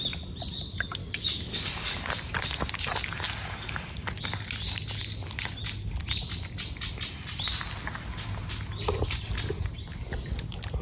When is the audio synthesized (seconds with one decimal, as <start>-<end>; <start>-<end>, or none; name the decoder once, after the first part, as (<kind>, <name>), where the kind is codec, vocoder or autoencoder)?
1.0-2.0 (codec, DAC)